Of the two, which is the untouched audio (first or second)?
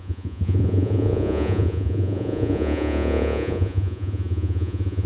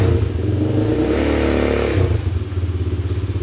second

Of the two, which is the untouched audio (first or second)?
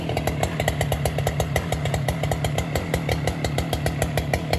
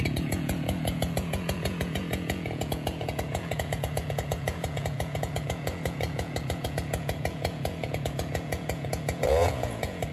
first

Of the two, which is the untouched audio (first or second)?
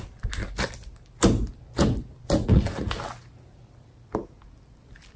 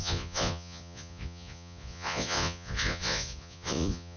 first